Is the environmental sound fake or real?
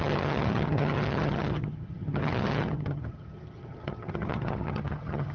fake